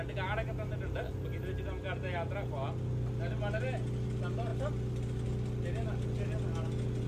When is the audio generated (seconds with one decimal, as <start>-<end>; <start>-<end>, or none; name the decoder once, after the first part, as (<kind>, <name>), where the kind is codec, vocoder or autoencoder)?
none